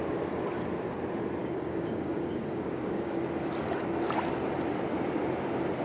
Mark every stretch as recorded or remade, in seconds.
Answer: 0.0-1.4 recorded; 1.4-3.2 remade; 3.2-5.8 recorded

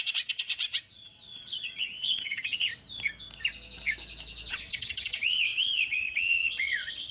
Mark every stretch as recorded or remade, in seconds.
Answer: 0.0-2.7 remade; 2.7-4.5 recorded; 4.5-7.1 remade

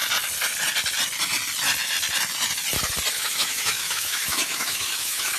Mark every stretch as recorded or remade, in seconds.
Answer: 0.0-3.1 recorded; 3.1-5.4 remade

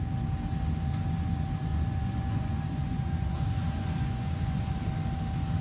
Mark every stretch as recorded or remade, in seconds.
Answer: 0.0-1.7 recorded; 1.7-4.7 remade; 4.7-5.6 recorded

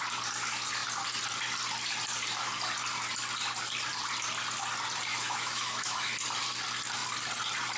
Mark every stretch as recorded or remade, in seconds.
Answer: 0.0-5.1 recorded; 5.1-6.1 remade; 6.1-7.8 recorded

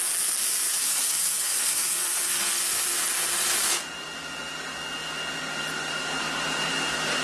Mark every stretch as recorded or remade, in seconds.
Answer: 0.0-0.8 recorded; 0.8-2.6 remade; 2.6-7.2 recorded